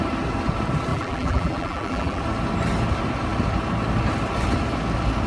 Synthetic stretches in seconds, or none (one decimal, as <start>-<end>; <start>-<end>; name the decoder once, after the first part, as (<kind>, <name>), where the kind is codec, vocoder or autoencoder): 0.9-2.2 (vocoder, BigVGAN v2)